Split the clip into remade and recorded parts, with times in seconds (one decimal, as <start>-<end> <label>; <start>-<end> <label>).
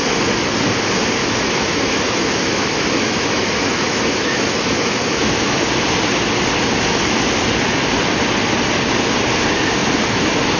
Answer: 0.0-1.2 recorded; 1.2-5.7 remade; 5.7-10.6 recorded